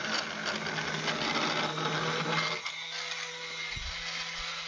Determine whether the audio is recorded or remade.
recorded